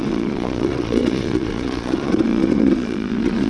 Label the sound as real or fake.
fake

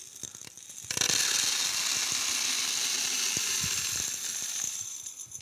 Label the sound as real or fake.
real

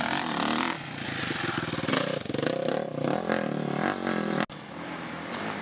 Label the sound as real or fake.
real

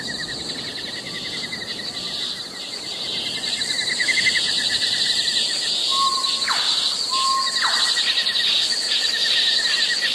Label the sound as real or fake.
real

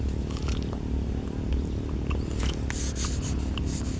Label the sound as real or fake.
real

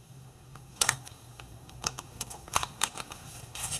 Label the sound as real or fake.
fake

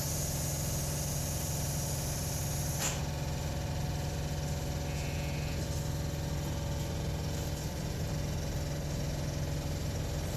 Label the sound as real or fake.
real